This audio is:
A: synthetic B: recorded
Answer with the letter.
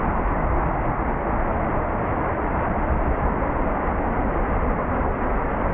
B